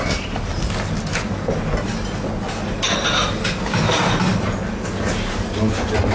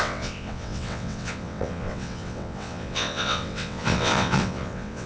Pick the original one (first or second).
first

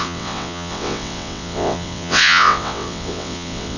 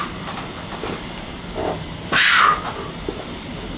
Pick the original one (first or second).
second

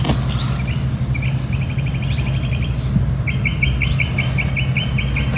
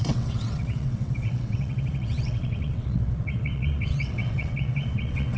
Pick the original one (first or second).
first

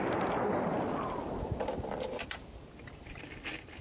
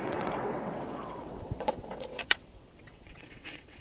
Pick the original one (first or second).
first